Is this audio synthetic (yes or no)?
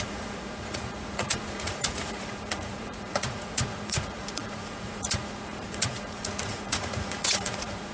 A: yes